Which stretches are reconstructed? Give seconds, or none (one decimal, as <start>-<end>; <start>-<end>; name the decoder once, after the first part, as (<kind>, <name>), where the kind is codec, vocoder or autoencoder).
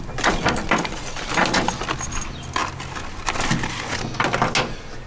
none